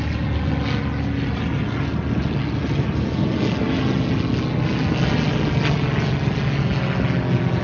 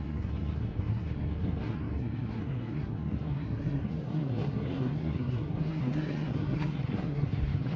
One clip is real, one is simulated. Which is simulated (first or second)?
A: second